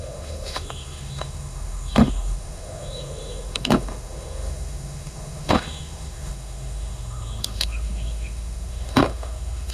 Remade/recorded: remade